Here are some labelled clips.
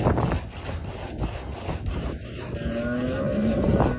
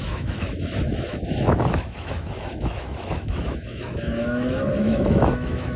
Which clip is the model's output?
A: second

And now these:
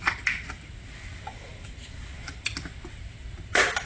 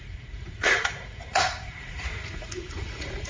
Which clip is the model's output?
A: second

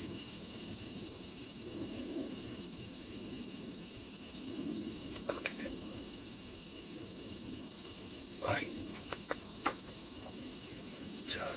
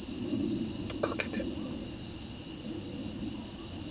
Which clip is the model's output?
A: first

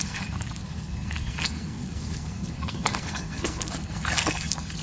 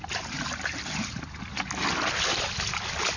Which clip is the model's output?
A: first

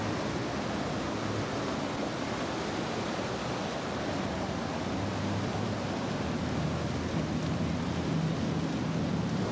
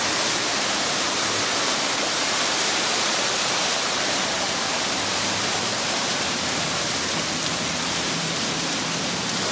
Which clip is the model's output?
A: second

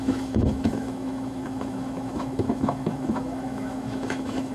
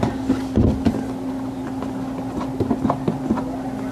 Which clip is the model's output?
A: first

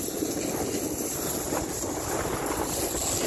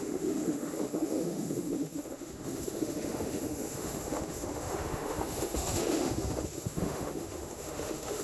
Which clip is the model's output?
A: second